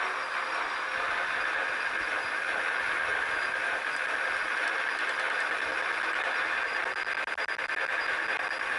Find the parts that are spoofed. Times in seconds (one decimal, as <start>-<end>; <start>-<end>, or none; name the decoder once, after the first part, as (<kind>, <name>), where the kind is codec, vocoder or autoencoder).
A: none